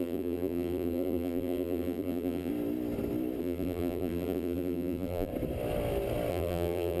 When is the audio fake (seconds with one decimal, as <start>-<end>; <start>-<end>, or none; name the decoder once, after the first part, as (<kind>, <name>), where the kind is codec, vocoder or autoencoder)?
0.0-2.5 (vocoder, BigVGAN v2); 3.4-5.3; 6.3-7.0